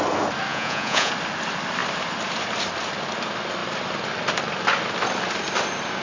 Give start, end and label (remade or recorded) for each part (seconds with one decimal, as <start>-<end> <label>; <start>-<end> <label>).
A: 0.0-0.5 recorded; 0.5-1.1 remade; 1.1-6.0 recorded